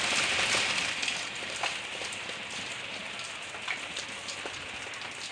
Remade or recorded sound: recorded